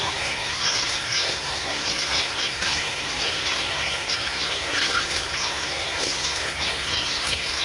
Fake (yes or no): yes